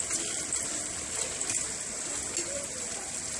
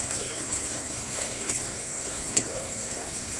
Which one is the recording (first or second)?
first